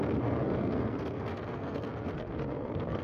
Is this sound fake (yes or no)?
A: yes